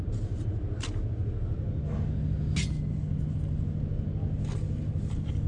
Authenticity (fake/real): real